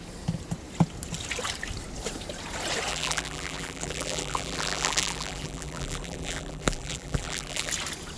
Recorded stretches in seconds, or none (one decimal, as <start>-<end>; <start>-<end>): 0.0-2.9; 7.7-8.2